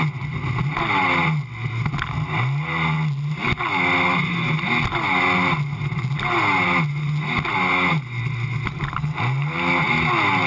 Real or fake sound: real